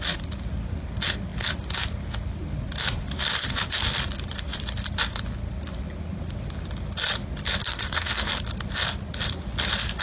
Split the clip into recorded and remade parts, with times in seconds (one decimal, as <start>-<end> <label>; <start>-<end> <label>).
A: 0.0-7.6 recorded; 7.6-8.3 remade; 8.3-10.0 recorded